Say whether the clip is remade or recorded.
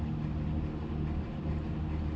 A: recorded